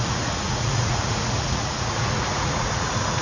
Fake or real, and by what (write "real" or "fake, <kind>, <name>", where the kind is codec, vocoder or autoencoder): fake, vocoder, Vocos